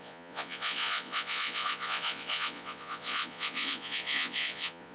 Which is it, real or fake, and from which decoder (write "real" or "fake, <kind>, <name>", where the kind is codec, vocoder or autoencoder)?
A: fake, vocoder, Vocos